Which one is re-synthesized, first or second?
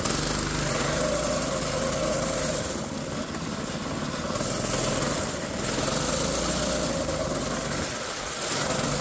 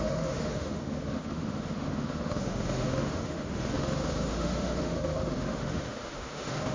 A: second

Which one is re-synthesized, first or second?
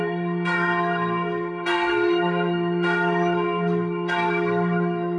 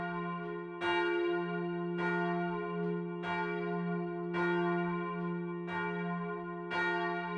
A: first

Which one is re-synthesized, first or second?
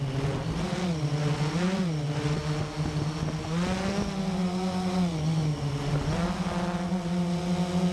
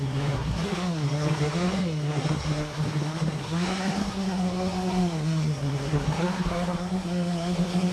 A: second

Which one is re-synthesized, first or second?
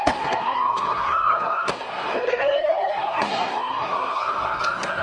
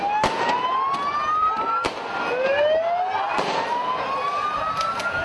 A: first